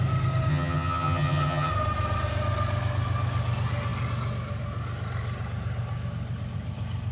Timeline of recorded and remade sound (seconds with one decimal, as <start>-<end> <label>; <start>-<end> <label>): 0.0-0.5 recorded; 0.5-1.7 remade; 1.7-7.1 recorded